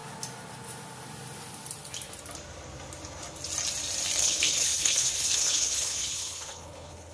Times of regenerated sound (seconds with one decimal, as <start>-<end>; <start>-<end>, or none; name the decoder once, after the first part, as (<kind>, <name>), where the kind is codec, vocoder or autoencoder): 4.2-7.1 (codec, HILCodec)

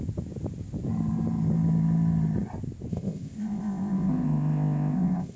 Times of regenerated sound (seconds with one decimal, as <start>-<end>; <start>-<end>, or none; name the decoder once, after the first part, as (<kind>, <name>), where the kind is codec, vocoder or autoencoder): 2.9-5.4 (codec, ZipCodec)

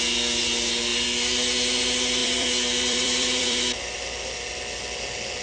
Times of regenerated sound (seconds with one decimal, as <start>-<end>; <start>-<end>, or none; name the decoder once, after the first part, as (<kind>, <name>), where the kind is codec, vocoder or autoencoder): 2.2-4.6 (vocoder, BigVGAN v2)

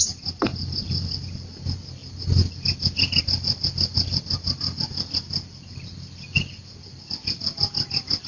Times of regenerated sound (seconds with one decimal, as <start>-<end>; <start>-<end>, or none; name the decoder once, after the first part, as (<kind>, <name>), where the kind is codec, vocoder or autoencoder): none

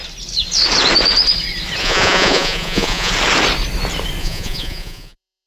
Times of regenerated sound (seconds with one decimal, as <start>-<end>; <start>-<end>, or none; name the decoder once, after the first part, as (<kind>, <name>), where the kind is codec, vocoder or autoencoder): 1.8-3.1 (vocoder, Vocos); 4.2-5.5

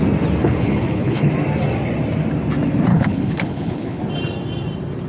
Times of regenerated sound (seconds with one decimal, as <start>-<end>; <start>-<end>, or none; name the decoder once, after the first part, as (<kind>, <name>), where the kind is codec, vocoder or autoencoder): 0.4-1.3 (codec, HILCodec); 2.9-4.0